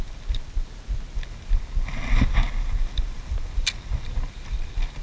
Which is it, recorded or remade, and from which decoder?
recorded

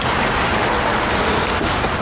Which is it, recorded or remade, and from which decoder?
recorded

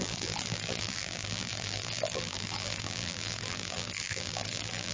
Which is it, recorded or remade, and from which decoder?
remade, vocoder, BigVGAN v2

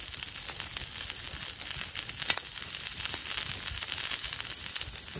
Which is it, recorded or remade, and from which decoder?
recorded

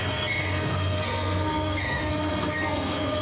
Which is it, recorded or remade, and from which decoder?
remade, codec, SNAC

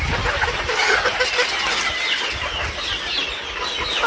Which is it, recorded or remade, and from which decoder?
recorded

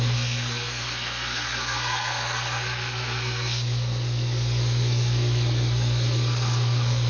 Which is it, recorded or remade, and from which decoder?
remade, codec, SNAC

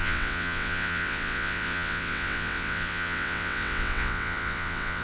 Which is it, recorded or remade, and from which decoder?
remade, vocoder, WaveNeXt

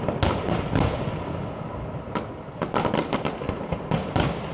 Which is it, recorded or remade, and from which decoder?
recorded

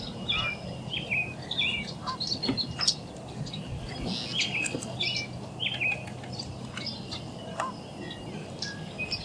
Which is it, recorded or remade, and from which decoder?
recorded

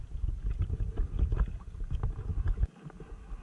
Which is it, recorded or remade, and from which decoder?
recorded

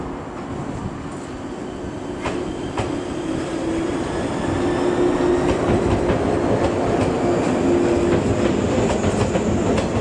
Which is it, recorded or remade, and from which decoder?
recorded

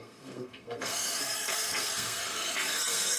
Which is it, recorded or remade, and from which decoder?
remade, codec, SNAC